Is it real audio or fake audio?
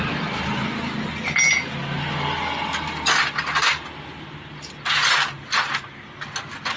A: real